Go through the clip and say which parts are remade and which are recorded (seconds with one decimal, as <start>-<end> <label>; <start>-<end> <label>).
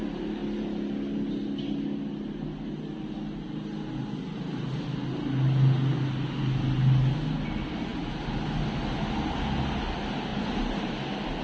0.0-10.3 recorded; 10.3-10.9 remade; 10.9-11.4 recorded